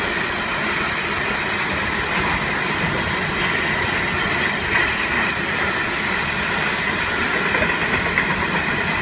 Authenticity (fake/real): real